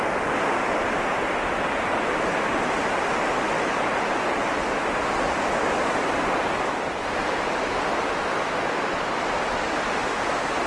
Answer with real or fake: real